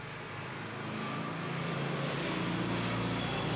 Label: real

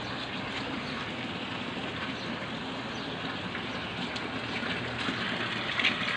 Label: real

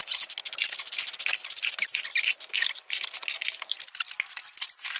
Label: real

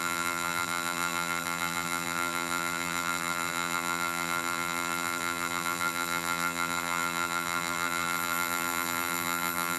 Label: fake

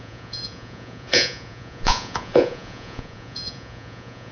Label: fake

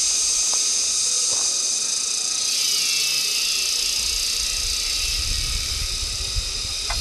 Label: real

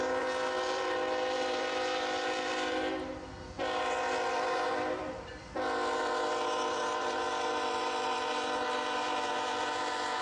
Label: fake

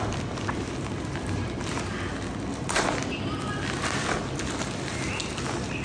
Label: real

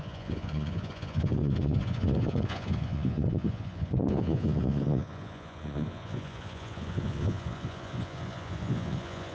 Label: fake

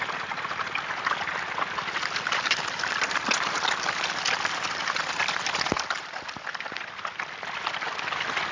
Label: real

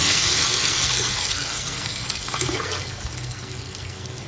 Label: fake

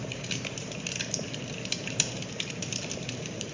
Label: fake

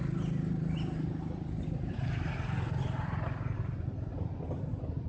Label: real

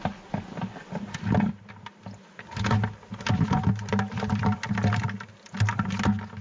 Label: real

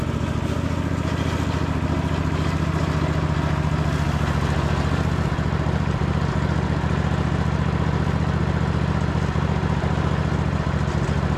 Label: real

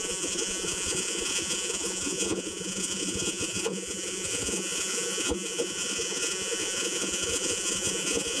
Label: fake